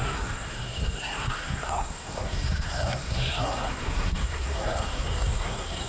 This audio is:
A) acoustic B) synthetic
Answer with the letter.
B